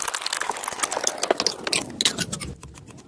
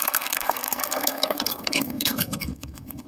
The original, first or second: first